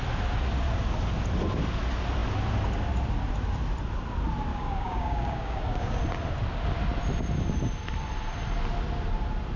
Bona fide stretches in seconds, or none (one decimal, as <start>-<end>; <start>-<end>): 0.0-4.5; 6.0-9.6